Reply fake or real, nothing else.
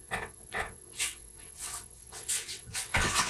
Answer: fake